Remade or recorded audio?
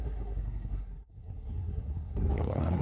remade